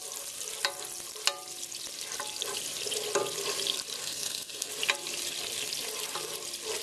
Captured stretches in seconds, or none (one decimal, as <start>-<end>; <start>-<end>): 0.0-4.0; 4.7-6.8